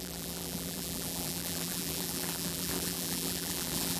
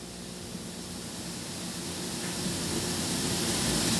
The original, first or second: second